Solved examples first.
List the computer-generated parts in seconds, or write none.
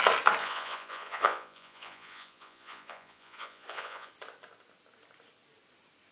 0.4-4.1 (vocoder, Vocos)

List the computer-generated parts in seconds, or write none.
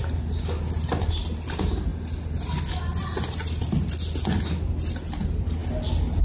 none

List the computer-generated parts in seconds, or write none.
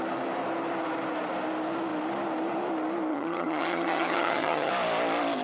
3.1-4.7 (vocoder, HiFi-GAN)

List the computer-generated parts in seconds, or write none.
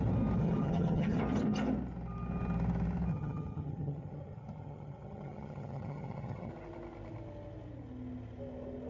0.4-1.2 (vocoder, HiFi-GAN); 3.1-6.5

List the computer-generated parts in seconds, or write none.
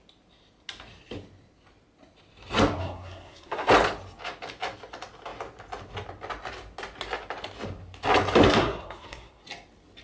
2.8-3.7 (codec, SNAC); 8.6-9.4